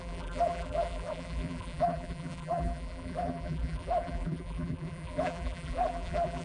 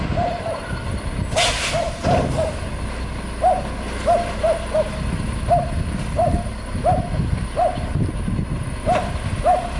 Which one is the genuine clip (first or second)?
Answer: second